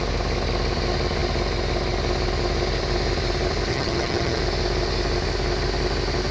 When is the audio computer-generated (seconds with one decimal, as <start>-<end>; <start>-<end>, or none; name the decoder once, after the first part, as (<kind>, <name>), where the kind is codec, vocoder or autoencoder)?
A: 3.7-4.4 (vocoder, HiFi-GAN)